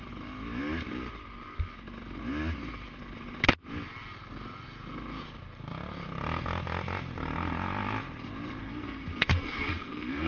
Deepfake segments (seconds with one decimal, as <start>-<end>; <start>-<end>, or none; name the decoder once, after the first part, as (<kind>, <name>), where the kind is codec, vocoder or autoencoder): 8.6-10.3 (codec, SNAC)